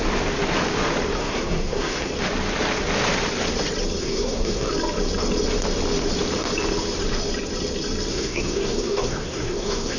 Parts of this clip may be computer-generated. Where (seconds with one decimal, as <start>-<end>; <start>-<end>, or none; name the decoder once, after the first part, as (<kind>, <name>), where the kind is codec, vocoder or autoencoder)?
1.2-2.1 (codec, SNAC); 4.0-4.7; 8.1-10.0

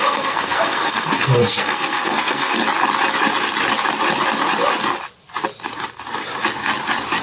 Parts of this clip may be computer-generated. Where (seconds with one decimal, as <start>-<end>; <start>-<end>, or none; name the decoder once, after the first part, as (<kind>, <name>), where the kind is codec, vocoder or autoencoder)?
0.0-2.6 (codec, SNAC)

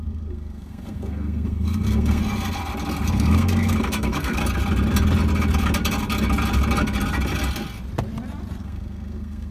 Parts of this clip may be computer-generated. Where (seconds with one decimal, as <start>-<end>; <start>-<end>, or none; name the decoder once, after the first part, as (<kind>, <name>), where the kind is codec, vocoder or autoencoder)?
0.0-2.2 (codec, SNAC); 3.1-4.4; 8.6-9.5

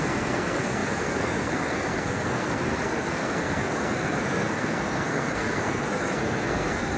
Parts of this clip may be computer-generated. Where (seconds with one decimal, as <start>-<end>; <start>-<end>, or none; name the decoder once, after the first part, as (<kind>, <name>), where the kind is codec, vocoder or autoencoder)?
0.0-7.0 (codec, SNAC)